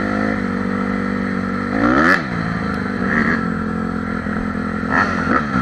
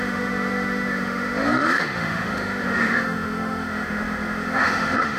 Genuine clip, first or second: first